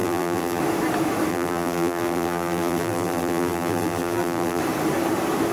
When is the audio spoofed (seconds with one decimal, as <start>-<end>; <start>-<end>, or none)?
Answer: 0.0-0.6; 1.3-4.6